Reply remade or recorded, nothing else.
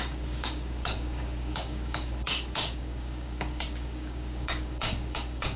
remade